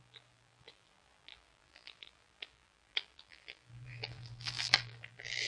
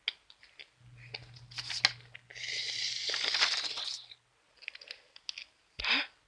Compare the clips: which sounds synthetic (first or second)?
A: first